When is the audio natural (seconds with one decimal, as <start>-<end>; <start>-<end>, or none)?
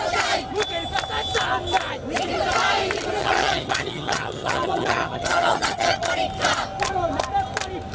0.0-3.2; 6.1-7.9